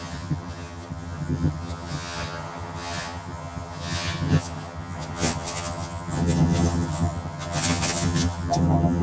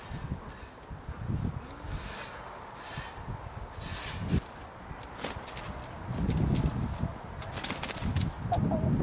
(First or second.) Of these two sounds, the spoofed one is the first